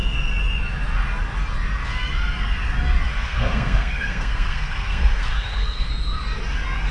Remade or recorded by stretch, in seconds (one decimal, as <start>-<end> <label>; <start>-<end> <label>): 0.0-3.1 recorded; 3.1-5.9 remade; 5.9-6.9 recorded